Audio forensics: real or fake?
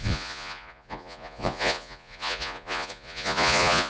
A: fake